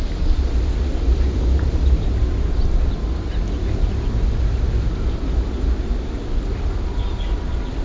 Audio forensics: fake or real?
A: real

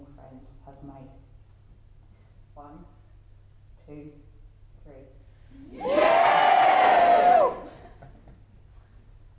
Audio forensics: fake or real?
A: real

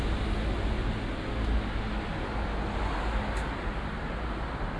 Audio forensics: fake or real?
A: real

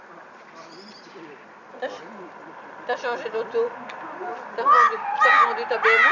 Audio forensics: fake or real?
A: real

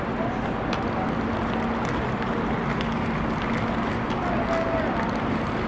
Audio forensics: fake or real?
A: real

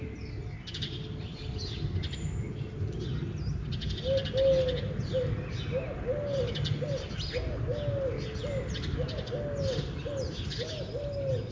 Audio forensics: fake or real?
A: real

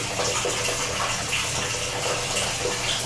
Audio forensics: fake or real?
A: real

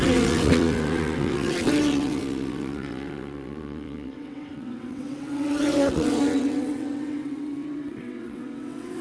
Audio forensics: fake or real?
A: fake